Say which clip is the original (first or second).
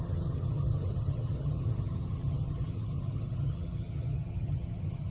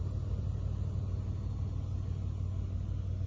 second